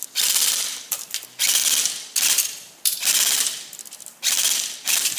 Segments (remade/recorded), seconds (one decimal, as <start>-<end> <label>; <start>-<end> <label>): 0.0-1.6 recorded; 1.6-4.2 remade; 4.2-5.2 recorded